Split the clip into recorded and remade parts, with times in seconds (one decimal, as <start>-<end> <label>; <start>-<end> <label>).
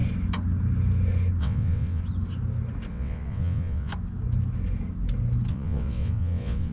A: 0.0-1.4 recorded; 1.4-2.0 remade; 2.0-2.9 recorded; 2.9-3.9 remade; 3.9-5.5 recorded; 5.5-6.7 remade